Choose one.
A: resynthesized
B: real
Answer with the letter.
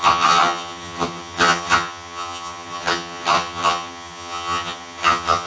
A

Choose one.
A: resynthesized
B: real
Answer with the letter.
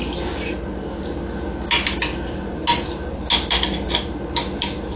B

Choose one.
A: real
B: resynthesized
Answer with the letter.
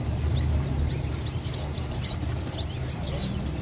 A